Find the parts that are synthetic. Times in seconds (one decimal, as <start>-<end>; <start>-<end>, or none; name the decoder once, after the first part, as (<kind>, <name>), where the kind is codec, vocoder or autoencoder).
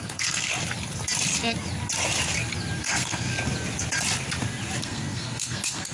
0.0-0.5 (codec, SNAC); 2.8-3.3; 4.8-5.9